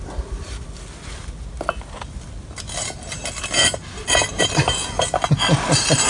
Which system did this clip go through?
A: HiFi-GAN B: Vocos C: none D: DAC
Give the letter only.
C